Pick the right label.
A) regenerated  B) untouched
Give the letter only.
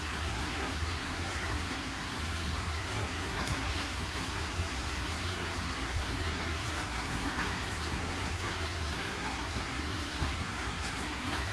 A